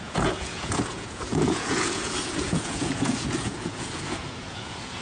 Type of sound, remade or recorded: remade